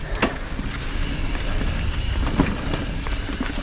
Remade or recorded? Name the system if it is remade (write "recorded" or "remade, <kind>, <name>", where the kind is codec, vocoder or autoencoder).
recorded